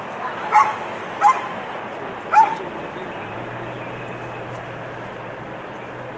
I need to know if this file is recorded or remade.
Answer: recorded